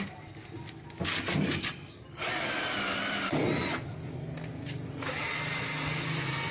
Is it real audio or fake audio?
real